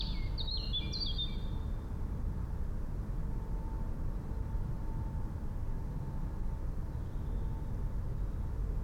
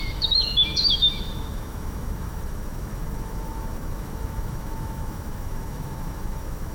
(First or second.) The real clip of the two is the first